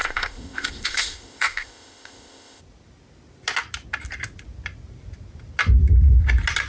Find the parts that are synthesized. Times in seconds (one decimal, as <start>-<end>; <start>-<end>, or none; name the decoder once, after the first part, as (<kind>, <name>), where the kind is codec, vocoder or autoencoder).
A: 0.0-2.6 (codec, ZipCodec)